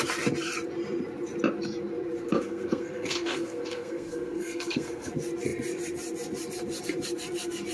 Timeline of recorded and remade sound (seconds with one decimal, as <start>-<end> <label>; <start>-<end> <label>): 0.0-2.3 recorded; 2.3-5.1 remade; 5.1-7.7 recorded